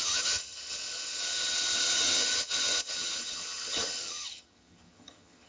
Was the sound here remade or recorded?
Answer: remade